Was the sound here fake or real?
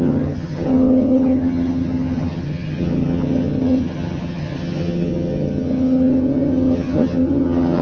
fake